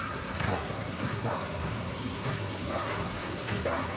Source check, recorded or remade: remade